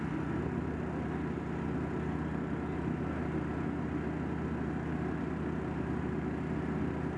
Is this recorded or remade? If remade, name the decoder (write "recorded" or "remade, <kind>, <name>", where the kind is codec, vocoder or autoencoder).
recorded